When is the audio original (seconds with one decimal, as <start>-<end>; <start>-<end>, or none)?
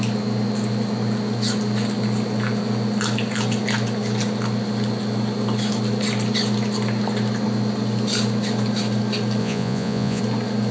0.0-9.4; 10.2-10.7